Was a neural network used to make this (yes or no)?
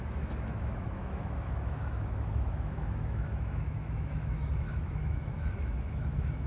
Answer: yes